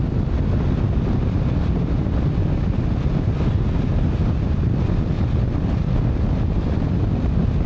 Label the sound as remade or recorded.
recorded